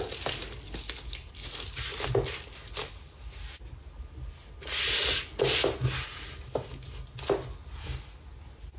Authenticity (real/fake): real